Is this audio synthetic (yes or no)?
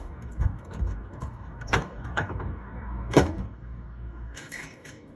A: yes